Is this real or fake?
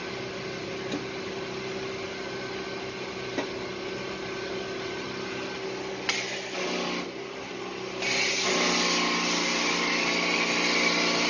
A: real